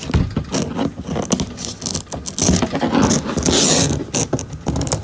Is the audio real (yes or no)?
yes